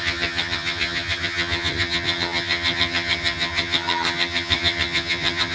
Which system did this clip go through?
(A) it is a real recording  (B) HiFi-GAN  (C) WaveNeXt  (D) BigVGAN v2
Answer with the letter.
B